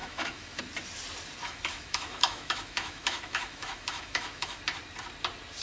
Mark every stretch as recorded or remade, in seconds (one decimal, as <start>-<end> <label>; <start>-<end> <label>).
0.0-0.6 remade; 0.6-1.4 recorded; 1.4-4.6 remade; 4.6-5.6 recorded